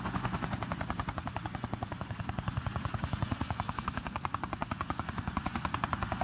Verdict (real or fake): fake